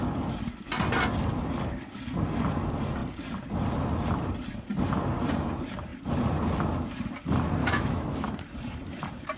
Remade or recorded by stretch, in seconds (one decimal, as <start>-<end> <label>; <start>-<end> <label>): 0.0-7.6 recorded; 7.6-8.3 remade; 8.3-9.4 recorded